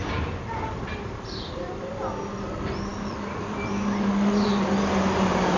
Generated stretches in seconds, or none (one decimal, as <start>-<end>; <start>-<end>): none